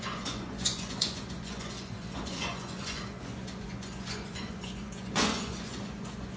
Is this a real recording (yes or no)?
no